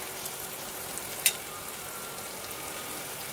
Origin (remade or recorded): recorded